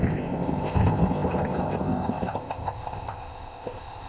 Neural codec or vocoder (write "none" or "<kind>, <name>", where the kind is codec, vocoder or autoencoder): codec, ZipCodec